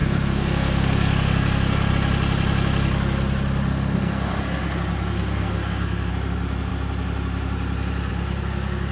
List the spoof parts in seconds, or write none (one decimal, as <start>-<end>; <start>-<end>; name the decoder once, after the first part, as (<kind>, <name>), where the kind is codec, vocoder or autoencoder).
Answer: 0.0-1.9 (codec, SNAC); 3.7-4.4; 5.1-6.1